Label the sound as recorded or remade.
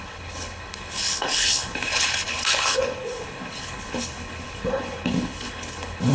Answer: remade